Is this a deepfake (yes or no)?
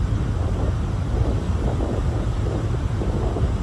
no